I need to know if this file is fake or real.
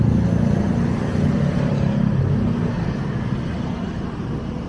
real